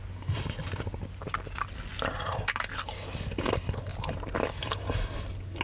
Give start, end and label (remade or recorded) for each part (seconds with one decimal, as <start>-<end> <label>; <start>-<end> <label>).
0.0-3.9 recorded; 3.9-4.5 remade; 4.5-5.6 recorded